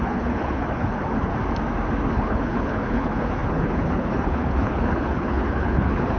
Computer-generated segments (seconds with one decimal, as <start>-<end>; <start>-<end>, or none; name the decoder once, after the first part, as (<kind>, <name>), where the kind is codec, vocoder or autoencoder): 0.0-1.3 (codec, HILCodec); 2.1-6.2